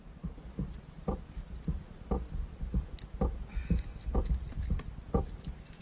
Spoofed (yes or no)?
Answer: no